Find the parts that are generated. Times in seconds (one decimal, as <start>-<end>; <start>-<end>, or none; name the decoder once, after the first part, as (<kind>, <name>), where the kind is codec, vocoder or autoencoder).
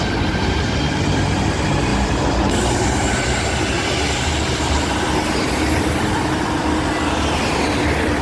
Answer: 1.9-2.6 (vocoder, BigVGAN v2)